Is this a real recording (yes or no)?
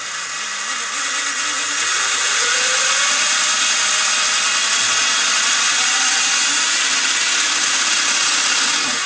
yes